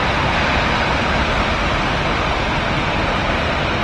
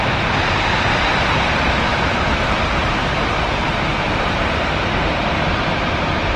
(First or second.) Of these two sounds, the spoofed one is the second